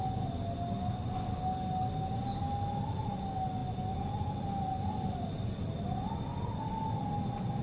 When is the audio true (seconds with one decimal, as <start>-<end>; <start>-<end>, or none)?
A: 0.0-7.6